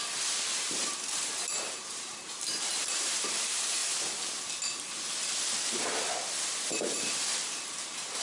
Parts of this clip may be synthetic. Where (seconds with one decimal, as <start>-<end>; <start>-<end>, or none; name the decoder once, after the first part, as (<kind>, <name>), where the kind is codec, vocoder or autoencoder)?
0.0-3.8 (vocoder, BigVGAN v2); 6.4-8.2